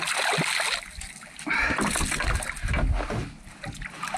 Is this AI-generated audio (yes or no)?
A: no